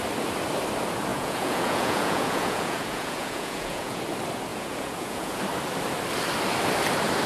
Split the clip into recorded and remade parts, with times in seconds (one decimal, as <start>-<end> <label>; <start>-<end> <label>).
0.0-1.1 recorded; 1.1-4.0 remade; 4.0-4.5 recorded; 4.5-5.4 remade; 5.4-7.3 recorded